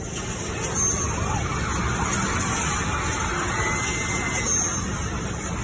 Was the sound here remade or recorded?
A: recorded